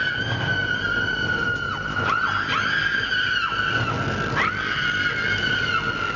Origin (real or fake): real